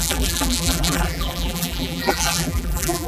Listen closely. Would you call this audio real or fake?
fake